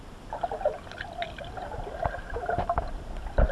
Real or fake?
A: real